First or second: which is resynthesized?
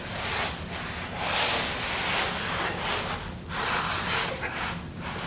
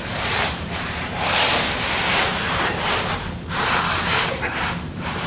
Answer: second